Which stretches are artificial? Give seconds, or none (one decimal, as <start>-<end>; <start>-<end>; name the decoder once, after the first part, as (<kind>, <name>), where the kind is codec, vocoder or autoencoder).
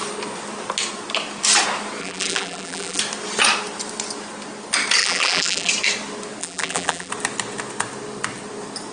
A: 2.0-3.0 (vocoder, BigVGAN v2); 5.0-5.7; 6.4-7.1